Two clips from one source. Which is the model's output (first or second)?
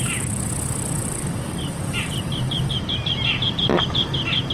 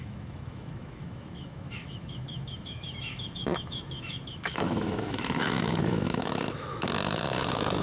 second